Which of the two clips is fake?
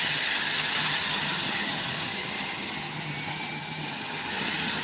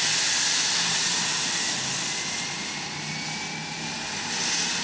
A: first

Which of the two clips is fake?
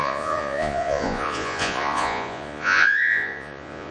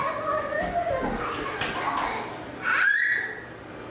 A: first